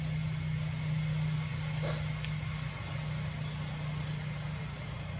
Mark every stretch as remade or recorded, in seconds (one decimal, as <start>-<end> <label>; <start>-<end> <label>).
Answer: 0.0-5.2 recorded